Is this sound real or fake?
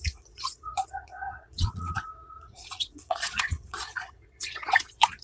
fake